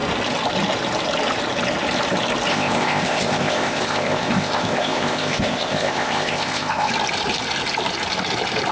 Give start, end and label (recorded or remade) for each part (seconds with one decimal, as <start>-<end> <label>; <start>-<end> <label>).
0.0-2.5 recorded; 2.5-6.9 remade; 6.9-8.7 recorded